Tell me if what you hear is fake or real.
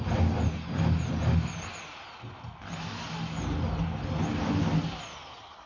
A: real